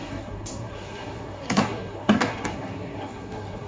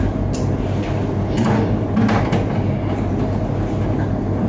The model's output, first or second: first